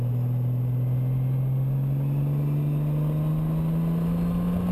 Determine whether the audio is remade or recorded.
recorded